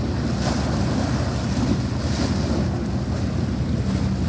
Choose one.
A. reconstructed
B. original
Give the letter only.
B